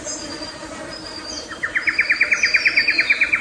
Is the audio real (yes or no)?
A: no